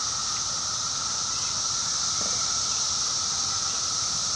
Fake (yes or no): no